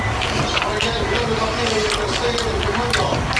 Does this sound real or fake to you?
real